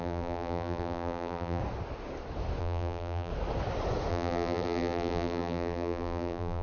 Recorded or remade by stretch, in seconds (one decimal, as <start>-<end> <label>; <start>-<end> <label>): 0.0-1.6 remade; 1.6-2.6 recorded; 2.6-3.3 remade; 3.3-4.1 recorded; 4.1-6.6 remade

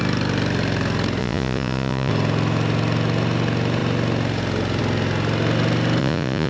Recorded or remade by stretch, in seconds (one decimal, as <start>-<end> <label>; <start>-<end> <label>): 0.0-1.2 recorded; 1.2-2.1 remade; 2.1-6.0 recorded; 6.0-6.5 remade

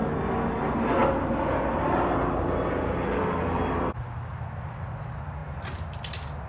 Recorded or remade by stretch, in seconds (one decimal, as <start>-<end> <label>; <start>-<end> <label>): 0.0-6.5 recorded

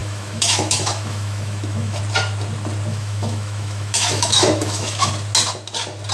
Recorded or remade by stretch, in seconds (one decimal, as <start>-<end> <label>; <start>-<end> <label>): 0.0-2.0 remade; 2.0-2.9 recorded; 2.9-5.1 remade; 5.1-6.1 recorded

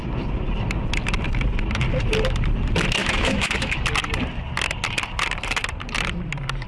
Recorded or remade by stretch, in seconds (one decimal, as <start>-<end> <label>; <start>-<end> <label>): 0.0-3.0 recorded; 3.0-3.8 remade; 3.8-6.7 recorded

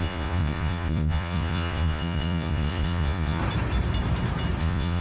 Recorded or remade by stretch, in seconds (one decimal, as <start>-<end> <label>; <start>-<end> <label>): 0.0-3.4 remade; 3.4-4.6 recorded; 4.6-5.0 remade